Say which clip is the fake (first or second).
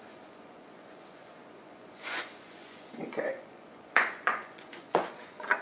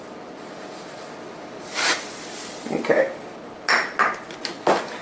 first